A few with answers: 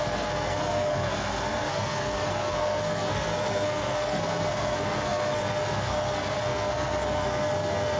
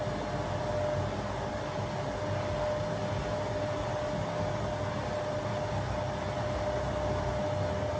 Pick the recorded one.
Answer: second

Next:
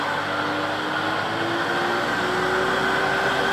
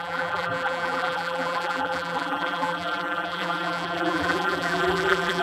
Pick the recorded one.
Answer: first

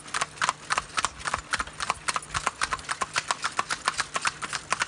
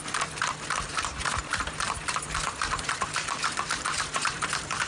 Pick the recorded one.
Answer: first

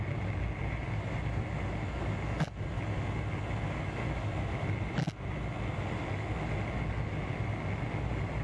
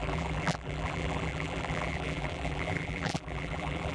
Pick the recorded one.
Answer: first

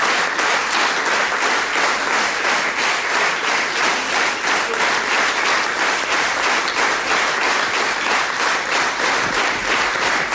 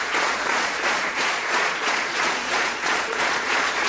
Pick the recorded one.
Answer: first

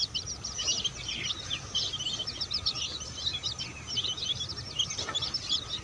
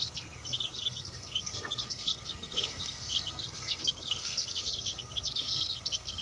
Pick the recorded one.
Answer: first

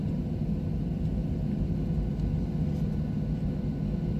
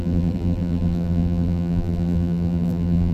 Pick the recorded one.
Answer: first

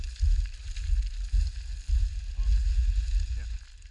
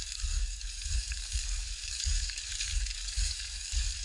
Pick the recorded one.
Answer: first